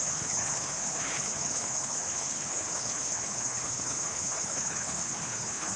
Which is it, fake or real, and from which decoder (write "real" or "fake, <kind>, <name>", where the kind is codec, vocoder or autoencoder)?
fake, codec, HILCodec